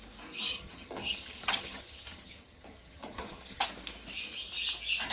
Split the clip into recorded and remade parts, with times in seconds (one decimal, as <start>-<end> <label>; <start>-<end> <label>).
0.0-0.5 recorded; 0.5-3.6 remade; 3.6-5.1 recorded